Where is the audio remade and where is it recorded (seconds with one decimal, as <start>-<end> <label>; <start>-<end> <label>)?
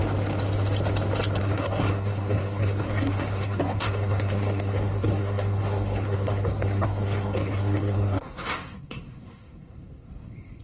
0.0-1.4 recorded; 1.4-10.6 remade